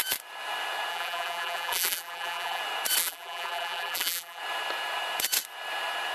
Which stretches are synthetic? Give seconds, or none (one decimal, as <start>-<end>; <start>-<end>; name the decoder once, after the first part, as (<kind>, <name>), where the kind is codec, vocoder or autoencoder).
0.9-2.6 (vocoder, BigVGAN v2); 3.0-4.4